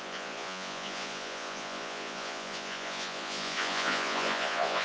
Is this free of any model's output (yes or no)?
no